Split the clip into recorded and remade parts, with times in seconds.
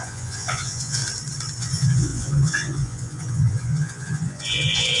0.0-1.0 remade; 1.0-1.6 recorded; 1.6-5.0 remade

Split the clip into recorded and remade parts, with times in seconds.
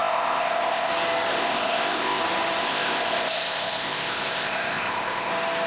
0.0-0.9 remade; 0.9-1.3 recorded; 1.3-2.2 remade; 2.2-2.6 recorded; 2.6-5.3 remade; 5.3-5.7 recorded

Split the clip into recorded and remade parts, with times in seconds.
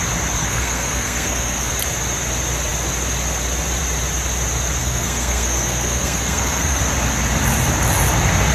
0.0-0.4 recorded; 0.4-1.7 remade; 1.7-4.8 recorded; 4.8-6.8 remade; 6.8-8.5 recorded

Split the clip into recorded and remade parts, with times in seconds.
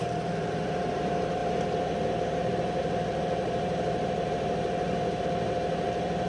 0.0-6.3 remade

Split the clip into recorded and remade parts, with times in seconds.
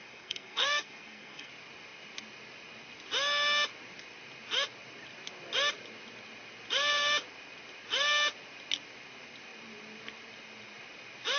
0.0-1.5 remade; 1.5-11.4 recorded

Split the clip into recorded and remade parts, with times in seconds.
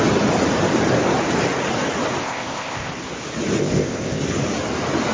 0.0-2.2 recorded; 2.2-2.9 remade; 2.9-3.6 recorded; 3.6-4.2 remade; 4.2-5.1 recorded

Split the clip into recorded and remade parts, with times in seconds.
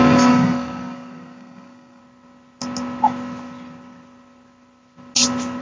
0.0-2.0 remade; 2.0-5.6 recorded